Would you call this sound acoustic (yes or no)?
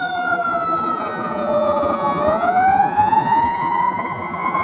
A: no